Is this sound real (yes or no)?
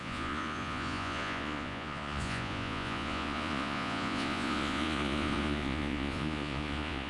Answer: no